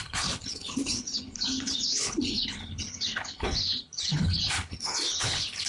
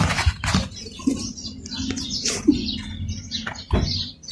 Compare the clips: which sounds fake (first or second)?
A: first